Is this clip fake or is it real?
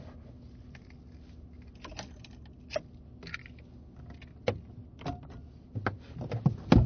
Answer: real